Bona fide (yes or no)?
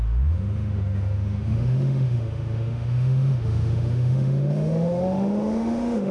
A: no